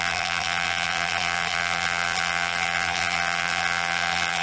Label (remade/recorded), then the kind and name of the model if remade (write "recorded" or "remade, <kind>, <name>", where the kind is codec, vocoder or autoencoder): remade, vocoder, BigVGAN v2